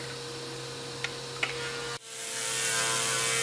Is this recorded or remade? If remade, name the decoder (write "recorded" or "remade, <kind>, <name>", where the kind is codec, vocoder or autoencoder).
recorded